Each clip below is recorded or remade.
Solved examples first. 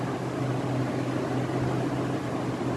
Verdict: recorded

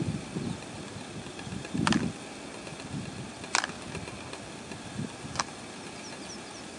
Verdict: recorded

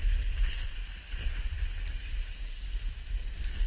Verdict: recorded